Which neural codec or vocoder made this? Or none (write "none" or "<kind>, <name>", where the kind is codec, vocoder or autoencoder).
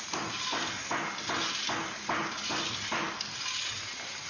none